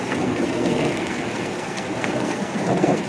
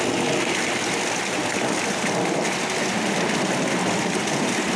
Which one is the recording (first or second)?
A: second